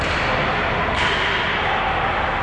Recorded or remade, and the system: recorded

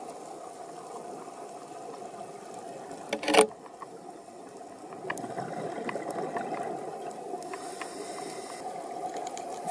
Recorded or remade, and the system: recorded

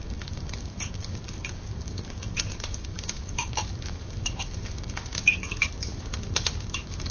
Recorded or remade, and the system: remade, codec, DAC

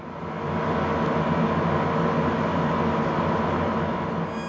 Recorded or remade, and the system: recorded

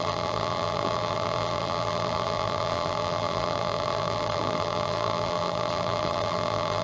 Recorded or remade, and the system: remade, vocoder, BigVGAN v2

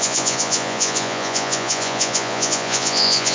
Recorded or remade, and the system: remade, vocoder, Vocos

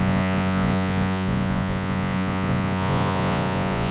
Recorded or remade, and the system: remade, vocoder, Vocos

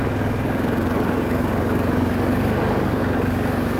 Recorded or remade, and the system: remade, codec, DAC